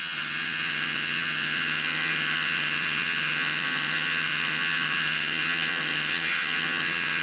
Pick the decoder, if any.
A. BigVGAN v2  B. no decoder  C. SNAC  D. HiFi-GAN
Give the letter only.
D